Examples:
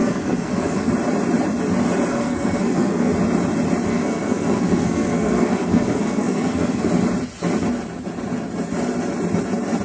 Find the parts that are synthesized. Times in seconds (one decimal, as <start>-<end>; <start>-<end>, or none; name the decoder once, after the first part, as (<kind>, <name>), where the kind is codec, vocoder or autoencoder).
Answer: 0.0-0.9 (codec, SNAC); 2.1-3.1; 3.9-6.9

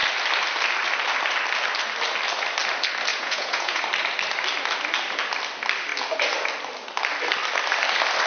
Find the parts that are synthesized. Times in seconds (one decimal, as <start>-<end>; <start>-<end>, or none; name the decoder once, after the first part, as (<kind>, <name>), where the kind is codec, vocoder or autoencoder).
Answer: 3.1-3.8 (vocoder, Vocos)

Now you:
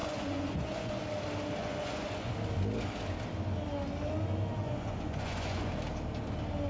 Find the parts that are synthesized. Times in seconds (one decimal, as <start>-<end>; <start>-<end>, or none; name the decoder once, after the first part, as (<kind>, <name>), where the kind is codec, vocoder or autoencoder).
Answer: 0.0-1.0 (vocoder, Vocos); 1.6-2.3; 4.6-5.7

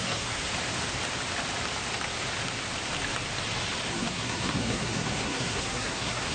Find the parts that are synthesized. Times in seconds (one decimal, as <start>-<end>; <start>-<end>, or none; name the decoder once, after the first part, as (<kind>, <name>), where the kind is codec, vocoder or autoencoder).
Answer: 0.0-0.5 (codec, SNAC); 3.9-6.3

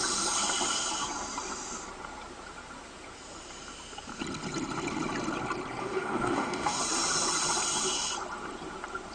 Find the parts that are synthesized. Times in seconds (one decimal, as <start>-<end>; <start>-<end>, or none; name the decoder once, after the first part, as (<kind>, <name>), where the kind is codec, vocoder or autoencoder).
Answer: 5.8-6.8 (codec, DAC)

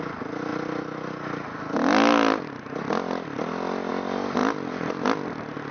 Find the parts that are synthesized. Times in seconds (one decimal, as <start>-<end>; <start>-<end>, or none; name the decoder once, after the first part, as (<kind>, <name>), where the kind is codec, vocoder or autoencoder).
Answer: 4.4-4.9 (vocoder, BigVGAN v2)